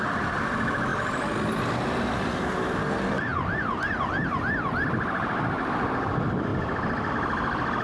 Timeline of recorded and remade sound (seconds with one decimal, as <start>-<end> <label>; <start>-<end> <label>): 0.0-7.8 recorded

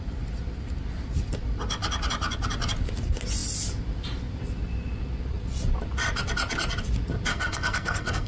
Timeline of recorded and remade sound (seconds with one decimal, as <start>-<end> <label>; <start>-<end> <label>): 0.0-7.3 recorded; 7.3-8.3 remade

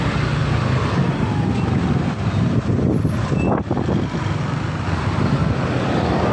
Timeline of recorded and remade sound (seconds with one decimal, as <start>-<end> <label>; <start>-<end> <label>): 0.0-6.3 recorded

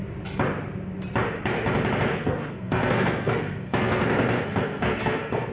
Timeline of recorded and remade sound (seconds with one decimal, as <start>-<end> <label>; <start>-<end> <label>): 0.0-2.1 recorded; 2.1-5.5 remade

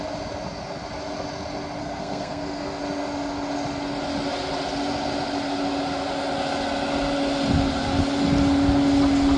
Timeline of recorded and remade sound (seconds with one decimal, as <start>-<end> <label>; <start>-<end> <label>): 0.0-1.8 recorded; 1.8-2.8 remade; 2.8-9.4 recorded

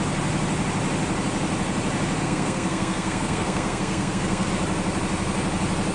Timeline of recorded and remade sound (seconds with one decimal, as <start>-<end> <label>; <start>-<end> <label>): 0.0-2.2 recorded; 2.2-4.5 remade; 4.5-5.9 recorded

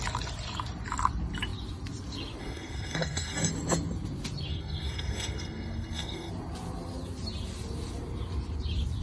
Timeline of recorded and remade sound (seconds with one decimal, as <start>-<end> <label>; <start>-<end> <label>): 0.0-2.4 recorded; 2.4-3.5 remade; 3.5-4.5 recorded; 4.5-6.3 remade; 6.3-9.0 recorded

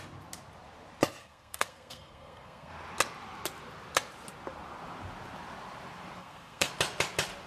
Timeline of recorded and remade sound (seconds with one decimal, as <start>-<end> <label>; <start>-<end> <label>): 0.0-1.2 recorded; 1.2-2.7 remade; 2.7-6.2 recorded; 6.2-6.7 remade; 6.7-7.5 recorded